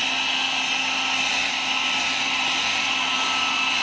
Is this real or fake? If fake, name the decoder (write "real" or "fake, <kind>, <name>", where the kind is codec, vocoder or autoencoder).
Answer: real